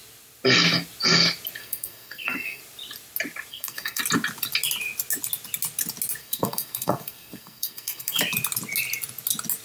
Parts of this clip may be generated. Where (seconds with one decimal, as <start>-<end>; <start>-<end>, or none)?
1.6-2.6; 3.5-4.0; 6.2-8.2